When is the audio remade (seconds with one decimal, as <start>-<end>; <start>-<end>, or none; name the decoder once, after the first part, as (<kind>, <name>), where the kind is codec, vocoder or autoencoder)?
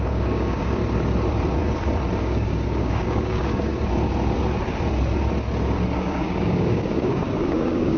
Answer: 0.0-0.8 (codec, DAC); 2.2-3.7; 6.0-8.0